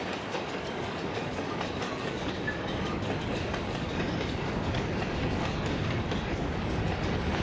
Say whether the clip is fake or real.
fake